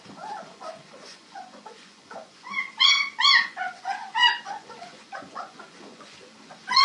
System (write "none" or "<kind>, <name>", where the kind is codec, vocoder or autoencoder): vocoder, Vocos